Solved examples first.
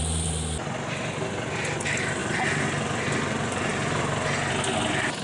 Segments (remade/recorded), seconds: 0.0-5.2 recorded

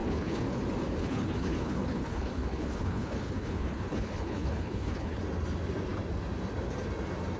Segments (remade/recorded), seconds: 0.0-0.6 remade; 0.6-1.0 recorded; 1.0-5.2 remade; 5.2-7.4 recorded

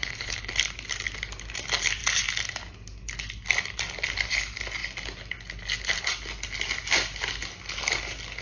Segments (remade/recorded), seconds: 0.0-0.5 remade; 0.5-8.4 recorded